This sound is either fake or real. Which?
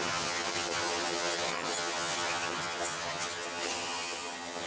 fake